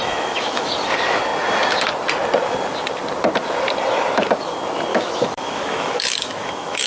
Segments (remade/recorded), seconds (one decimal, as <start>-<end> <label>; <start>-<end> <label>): 0.0-0.7 remade; 0.7-4.9 recorded; 4.9-6.9 remade